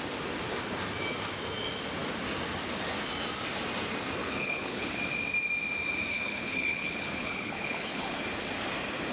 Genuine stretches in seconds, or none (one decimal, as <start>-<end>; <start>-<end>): 0.0-4.2; 5.0-6.1; 8.2-9.1